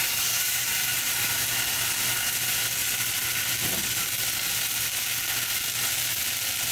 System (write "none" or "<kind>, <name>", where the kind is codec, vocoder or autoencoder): none